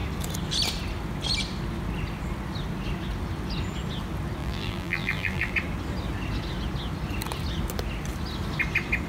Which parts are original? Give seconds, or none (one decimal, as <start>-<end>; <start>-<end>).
0.0-4.4; 5.5-9.1